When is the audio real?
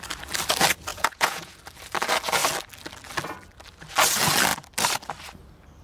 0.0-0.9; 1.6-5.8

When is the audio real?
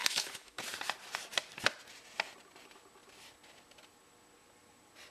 0.6-5.1